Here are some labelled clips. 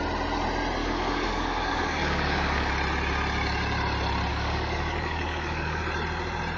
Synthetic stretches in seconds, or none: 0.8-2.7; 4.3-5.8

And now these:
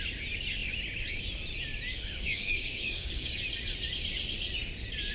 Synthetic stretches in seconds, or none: 1.9-3.3

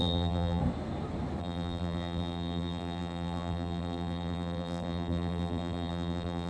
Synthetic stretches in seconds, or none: 0.0-0.6; 1.4-6.5

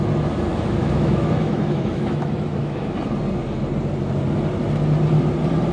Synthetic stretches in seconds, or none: 0.5-3.0